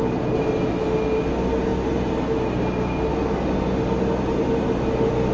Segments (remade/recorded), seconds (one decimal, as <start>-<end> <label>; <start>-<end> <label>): 0.0-5.3 recorded